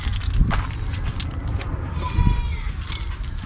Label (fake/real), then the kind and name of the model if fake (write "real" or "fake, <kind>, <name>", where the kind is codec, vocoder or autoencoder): real